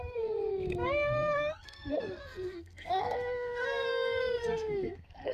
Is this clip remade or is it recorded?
remade